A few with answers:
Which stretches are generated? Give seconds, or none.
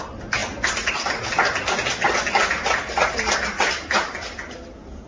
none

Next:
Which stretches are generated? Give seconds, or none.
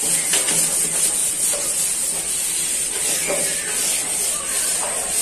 none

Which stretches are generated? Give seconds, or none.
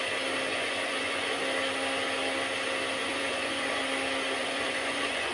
0.5-1.4 (vocoder, Vocos); 3.0-3.8; 4.4-5.3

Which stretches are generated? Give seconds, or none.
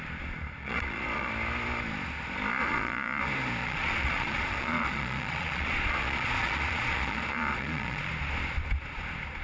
0.6-1.3 (vocoder, Vocos); 2.6-3.2; 3.6-8.1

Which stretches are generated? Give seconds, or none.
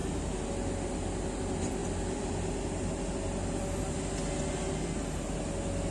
none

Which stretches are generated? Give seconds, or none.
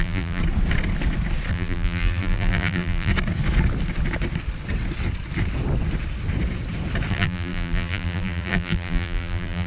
0.0-0.4 (vocoder, BigVGAN v2); 1.5-3.1; 7.1-9.7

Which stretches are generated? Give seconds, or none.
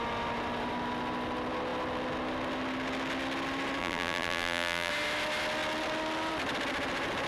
3.8-4.9 (vocoder, BigVGAN v2)